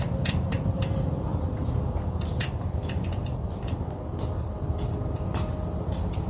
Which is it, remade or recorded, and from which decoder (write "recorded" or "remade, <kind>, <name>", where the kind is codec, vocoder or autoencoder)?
recorded